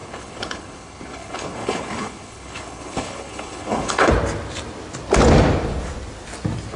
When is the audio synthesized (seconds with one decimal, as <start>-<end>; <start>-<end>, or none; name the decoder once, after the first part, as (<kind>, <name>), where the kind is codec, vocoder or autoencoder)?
0.0-4.1 (codec, HILCodec)